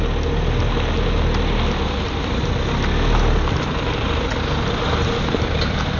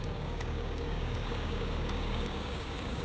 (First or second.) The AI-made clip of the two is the second